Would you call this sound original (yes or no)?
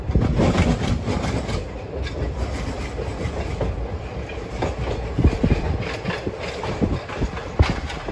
yes